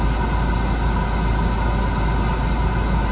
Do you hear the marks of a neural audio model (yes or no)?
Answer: no